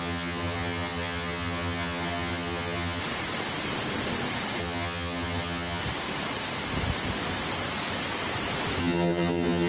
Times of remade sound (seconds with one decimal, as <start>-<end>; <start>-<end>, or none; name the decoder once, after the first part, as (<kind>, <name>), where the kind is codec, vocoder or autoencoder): 0.0-3.0 (vocoder, HiFi-GAN); 4.6-5.8; 8.8-9.7